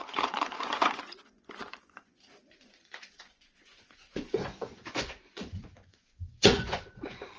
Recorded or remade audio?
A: remade